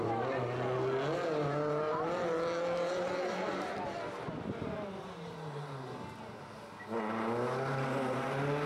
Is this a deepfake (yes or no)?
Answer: no